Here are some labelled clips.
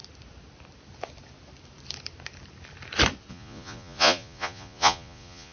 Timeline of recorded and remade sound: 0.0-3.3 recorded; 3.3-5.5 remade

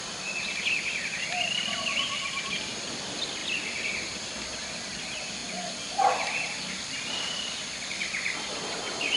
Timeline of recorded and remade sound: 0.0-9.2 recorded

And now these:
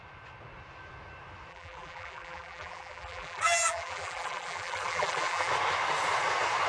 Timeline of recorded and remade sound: 0.0-1.5 recorded; 1.5-5.5 remade; 5.5-6.7 recorded

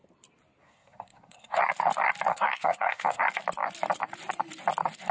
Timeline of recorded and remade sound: 0.0-0.6 recorded; 0.6-1.6 remade; 1.6-2.3 recorded; 2.3-3.2 remade; 3.2-5.1 recorded

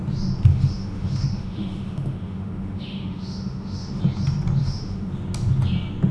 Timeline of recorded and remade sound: 0.0-0.5 recorded; 0.5-4.0 remade; 4.0-4.6 recorded; 4.6-5.1 remade; 5.1-6.1 recorded

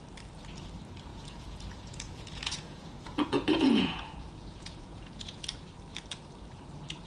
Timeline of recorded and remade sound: 0.0-1.1 recorded; 1.1-5.4 remade; 5.4-7.1 recorded